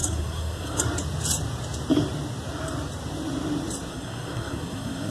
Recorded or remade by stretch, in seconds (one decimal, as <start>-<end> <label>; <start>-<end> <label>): 0.0-0.8 remade; 0.8-3.9 recorded; 3.9-5.1 remade